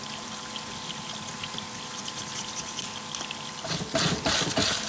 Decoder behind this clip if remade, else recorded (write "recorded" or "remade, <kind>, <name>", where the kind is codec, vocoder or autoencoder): recorded